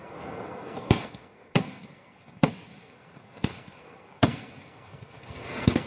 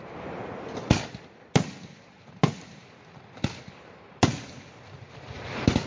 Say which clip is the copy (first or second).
first